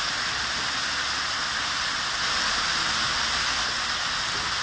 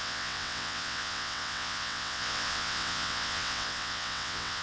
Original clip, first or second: first